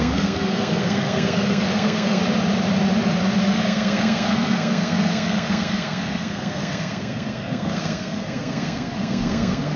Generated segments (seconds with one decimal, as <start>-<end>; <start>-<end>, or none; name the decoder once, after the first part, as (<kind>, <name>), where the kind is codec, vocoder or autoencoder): 0.0-2.2 (codec, SNAC); 3.4-9.8